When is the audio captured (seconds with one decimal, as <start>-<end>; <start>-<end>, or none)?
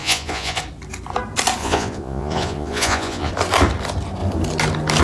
0.6-1.6; 3.3-5.0